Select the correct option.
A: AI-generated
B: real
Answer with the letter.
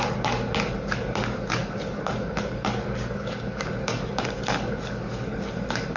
A